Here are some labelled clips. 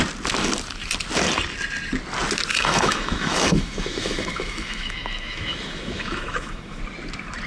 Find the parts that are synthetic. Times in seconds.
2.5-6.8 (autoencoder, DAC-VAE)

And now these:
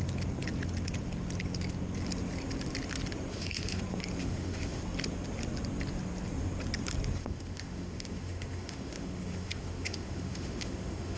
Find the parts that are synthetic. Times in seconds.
3.3-3.8 (autoencoder, DAC-VAE); 4.2-4.8; 7.2-11.2

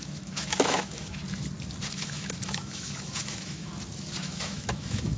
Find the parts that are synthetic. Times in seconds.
0.0-1.2 (autoencoder, DAC-VAE); 1.9-3.7; 4.2-5.2

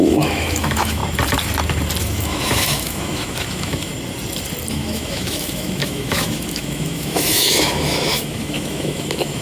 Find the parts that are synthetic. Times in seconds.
0.0-1.0 (autoencoder, DAC-VAE); 2.0-3.9; 4.7-9.4

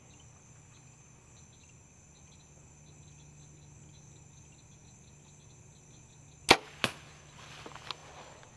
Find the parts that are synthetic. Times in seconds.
none

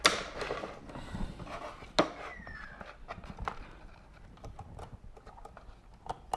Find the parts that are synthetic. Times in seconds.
none

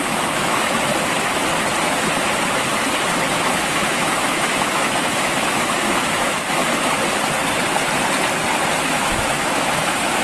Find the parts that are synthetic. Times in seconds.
0.0-0.9 (autoencoder, DAC-VAE); 3.3-6.6; 8.8-10.2

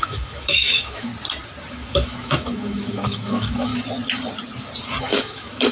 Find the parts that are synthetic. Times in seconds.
0.0-1.1 (autoencoder, DAC-VAE); 1.7-3.7; 5.0-5.7